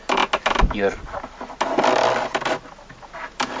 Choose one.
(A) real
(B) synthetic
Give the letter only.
A